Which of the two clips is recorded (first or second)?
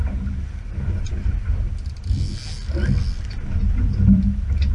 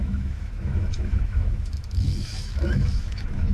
first